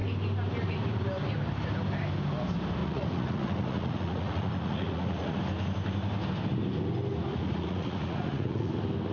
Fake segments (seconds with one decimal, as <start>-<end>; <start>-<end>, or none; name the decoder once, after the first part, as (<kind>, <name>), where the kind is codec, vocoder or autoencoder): 2.8-5.4 (vocoder, Vocos); 7.3-8.7